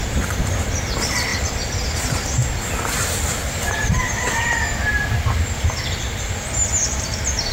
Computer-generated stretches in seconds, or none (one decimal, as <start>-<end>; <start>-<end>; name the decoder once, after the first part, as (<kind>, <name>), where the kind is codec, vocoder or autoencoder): none